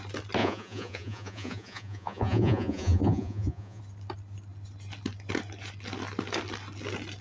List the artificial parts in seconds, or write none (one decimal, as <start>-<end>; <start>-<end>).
0.4-3.8